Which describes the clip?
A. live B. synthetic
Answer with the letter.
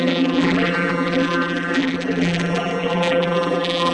B